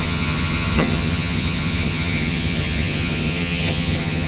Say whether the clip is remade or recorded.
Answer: remade